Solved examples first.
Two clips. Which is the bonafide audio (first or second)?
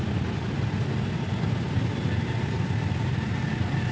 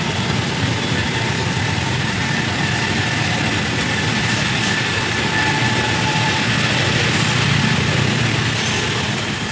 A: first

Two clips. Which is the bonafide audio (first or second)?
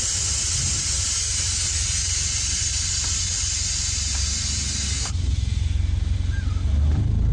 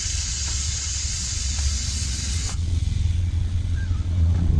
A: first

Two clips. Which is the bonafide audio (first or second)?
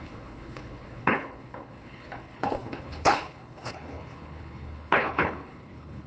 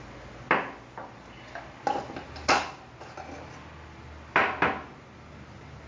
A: second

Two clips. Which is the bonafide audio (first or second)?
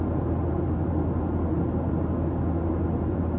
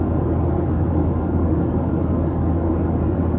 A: first